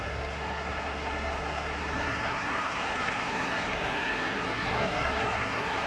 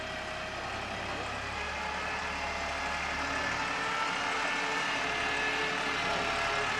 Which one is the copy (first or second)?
first